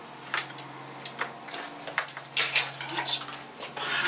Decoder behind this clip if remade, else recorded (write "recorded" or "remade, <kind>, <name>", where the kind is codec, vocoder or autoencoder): recorded